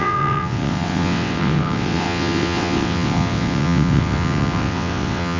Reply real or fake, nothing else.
fake